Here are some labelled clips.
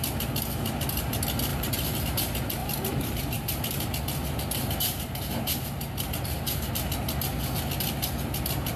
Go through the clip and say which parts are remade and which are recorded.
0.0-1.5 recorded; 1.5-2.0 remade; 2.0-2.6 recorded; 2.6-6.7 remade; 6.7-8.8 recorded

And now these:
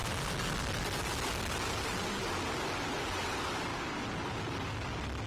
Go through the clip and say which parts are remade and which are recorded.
0.0-5.3 recorded

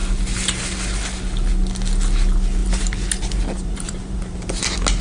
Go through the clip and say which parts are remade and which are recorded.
0.0-2.6 recorded; 2.6-4.6 remade; 4.6-5.0 recorded

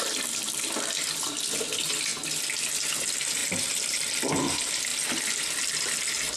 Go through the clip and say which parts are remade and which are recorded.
0.0-3.4 recorded; 3.4-4.1 remade; 4.1-6.4 recorded

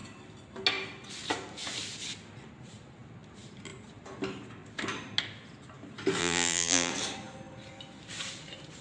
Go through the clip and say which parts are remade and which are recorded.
0.0-6.2 recorded; 6.2-6.9 remade; 6.9-8.8 recorded

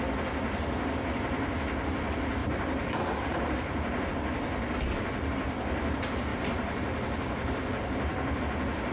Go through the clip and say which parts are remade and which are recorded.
0.0-2.4 recorded; 2.4-4.1 remade; 4.1-6.3 recorded; 6.3-8.4 remade; 8.4-8.9 recorded

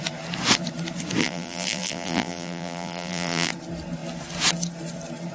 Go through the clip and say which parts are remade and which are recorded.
0.0-1.2 recorded; 1.2-3.5 remade; 3.5-5.3 recorded

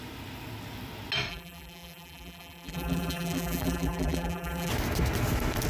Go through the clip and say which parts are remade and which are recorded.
0.0-1.3 recorded; 1.3-4.7 remade; 4.7-5.7 recorded